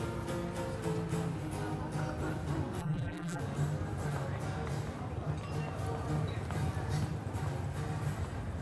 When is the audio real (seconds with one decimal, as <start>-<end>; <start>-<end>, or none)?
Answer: 0.0-2.8; 3.4-8.6